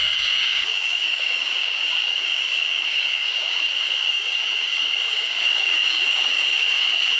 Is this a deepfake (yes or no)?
yes